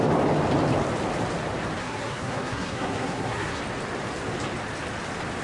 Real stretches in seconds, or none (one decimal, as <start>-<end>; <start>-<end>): 0.0-1.8; 3.6-5.4